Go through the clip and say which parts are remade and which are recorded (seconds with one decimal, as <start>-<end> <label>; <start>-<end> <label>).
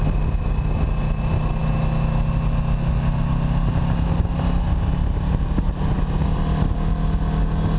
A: 0.0-7.8 recorded